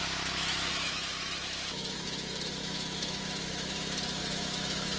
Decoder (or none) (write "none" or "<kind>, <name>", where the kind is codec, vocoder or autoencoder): autoencoder, DAC-VAE